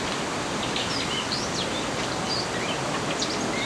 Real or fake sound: real